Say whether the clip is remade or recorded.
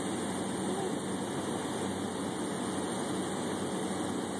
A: recorded